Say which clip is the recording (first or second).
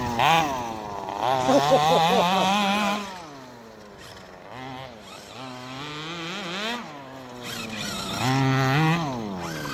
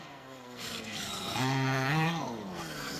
first